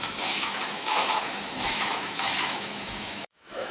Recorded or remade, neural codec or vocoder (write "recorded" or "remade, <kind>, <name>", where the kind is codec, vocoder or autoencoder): remade, autoencoder, DAC-VAE